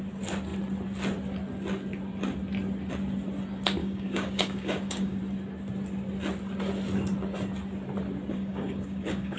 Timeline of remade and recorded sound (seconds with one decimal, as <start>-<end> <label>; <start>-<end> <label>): 0.0-3.8 recorded; 3.8-5.2 remade; 5.2-8.3 recorded; 8.3-9.4 remade